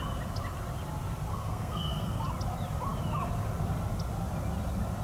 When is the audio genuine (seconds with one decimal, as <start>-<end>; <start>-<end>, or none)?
0.0-1.3; 2.2-5.0